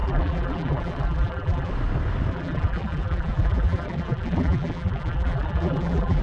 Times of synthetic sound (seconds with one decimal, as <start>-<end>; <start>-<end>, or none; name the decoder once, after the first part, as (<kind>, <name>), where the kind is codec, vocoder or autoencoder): 0.0-1.7 (vocoder, BigVGAN v2); 2.3-6.2